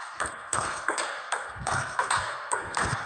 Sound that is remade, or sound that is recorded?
remade